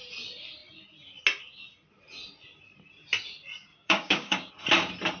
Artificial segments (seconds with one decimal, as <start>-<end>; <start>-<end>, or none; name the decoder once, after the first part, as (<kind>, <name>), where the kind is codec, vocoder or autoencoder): 3.7-4.5 (codec, DAC)